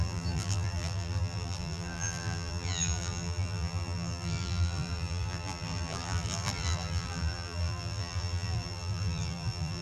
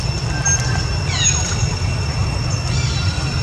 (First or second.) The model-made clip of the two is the first